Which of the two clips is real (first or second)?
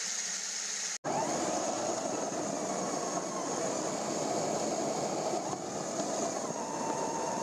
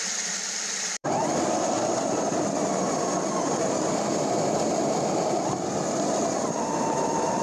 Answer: first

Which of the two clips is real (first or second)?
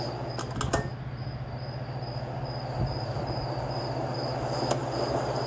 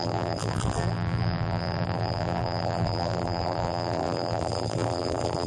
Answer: first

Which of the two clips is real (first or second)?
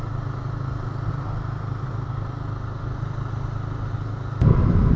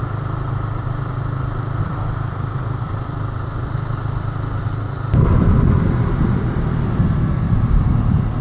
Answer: first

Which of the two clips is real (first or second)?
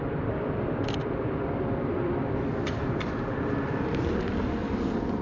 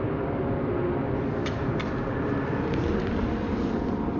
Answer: second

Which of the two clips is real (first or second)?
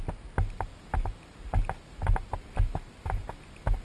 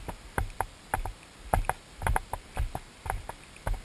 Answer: first